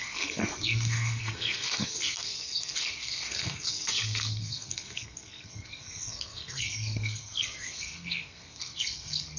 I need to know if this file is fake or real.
fake